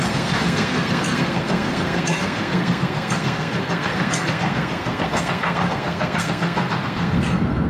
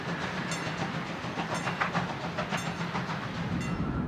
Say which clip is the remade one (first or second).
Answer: first